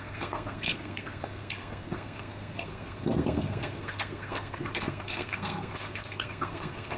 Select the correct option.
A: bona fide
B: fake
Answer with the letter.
B